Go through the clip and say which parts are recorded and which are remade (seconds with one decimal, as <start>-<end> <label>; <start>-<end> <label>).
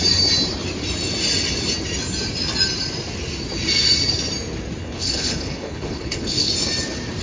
0.0-4.8 recorded; 4.8-6.5 remade; 6.5-7.2 recorded